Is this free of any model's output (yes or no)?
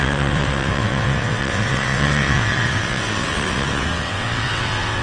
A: no